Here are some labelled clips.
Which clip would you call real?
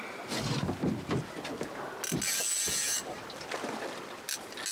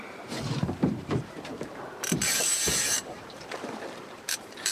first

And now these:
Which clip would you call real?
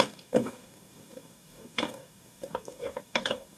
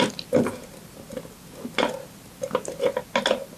second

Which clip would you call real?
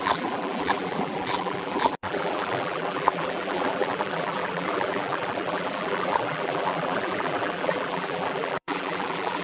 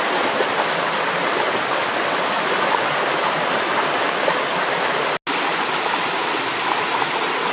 second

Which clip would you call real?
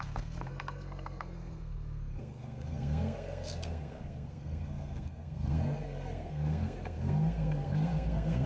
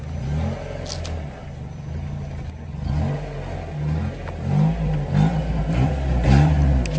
second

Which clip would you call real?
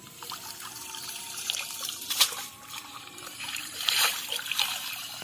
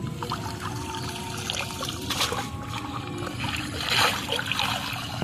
second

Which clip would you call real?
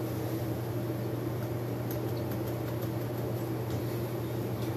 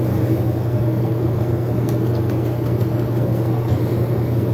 first